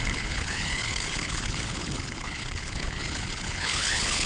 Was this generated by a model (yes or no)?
yes